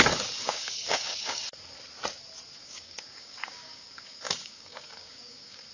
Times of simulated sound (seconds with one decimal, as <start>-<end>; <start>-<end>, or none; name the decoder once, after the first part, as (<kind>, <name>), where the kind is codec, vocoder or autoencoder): 0.4-1.4 (codec, DAC); 2.6-5.7